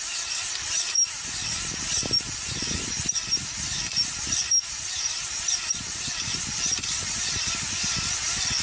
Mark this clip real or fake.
real